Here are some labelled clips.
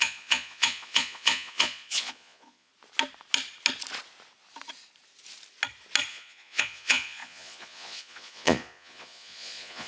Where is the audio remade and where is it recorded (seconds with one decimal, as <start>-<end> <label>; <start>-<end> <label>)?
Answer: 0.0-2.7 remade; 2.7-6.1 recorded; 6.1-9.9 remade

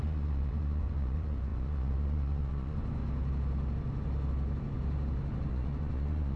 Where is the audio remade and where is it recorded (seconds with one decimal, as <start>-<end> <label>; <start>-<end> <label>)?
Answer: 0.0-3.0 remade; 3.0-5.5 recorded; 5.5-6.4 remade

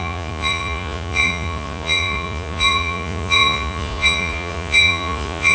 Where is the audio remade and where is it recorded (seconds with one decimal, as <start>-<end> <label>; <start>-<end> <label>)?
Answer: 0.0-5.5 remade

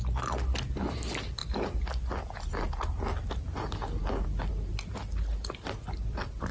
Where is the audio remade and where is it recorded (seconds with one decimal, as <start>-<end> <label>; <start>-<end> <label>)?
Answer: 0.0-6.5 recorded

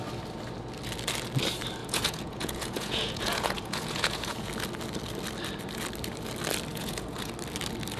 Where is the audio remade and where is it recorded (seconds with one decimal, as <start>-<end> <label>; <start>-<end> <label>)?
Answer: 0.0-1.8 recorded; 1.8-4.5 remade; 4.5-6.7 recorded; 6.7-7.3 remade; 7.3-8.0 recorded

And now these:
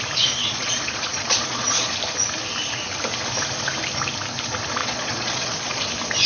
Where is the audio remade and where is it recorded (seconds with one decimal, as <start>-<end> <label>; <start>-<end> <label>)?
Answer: 0.0-0.4 recorded; 0.4-1.9 remade; 1.9-4.8 recorded; 4.8-5.8 remade; 5.8-6.3 recorded

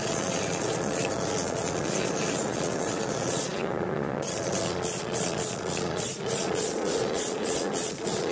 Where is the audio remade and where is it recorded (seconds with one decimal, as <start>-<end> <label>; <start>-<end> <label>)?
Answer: 0.0-8.3 remade

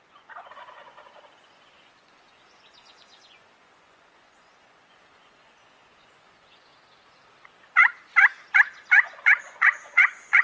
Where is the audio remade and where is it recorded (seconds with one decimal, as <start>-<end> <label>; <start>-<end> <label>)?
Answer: 0.0-6.7 remade; 6.7-9.0 recorded; 9.0-10.4 remade